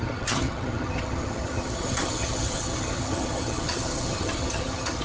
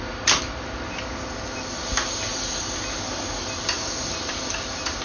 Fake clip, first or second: first